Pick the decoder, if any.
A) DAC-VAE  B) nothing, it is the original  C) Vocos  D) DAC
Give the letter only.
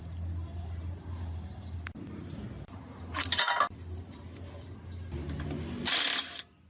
B